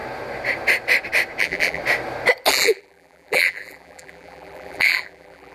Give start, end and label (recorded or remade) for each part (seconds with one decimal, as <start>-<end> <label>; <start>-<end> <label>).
0.0-1.4 recorded; 1.4-1.8 remade; 1.8-2.5 recorded; 2.5-5.5 remade